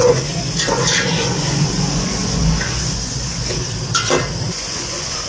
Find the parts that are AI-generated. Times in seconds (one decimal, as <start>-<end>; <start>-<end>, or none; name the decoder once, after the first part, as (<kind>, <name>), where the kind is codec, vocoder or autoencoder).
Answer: 0.0-3.6 (vocoder, Vocos); 4.4-5.3